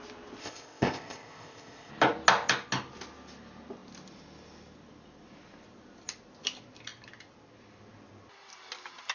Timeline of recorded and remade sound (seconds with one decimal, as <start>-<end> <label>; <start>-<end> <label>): 0.0-0.4 recorded; 0.4-1.9 remade; 1.9-9.1 recorded